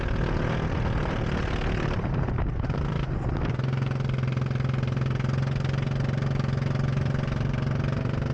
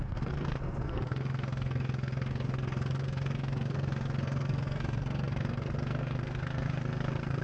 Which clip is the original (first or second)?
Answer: first